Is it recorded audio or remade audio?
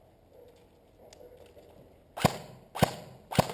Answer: recorded